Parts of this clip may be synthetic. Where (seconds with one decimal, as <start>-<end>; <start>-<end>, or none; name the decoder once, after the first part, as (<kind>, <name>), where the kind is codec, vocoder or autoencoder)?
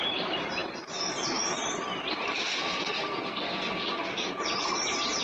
2.4-4.3 (codec, SNAC)